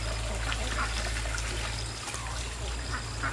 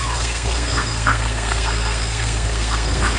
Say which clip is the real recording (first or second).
first